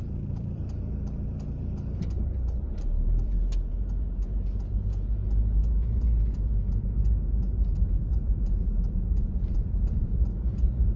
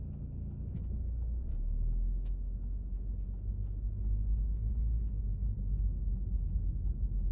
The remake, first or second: first